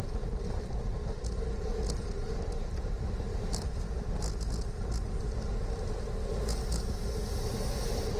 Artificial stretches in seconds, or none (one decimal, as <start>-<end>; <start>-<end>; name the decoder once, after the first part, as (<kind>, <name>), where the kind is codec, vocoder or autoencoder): none